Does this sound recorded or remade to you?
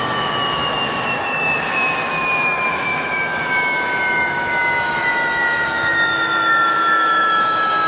remade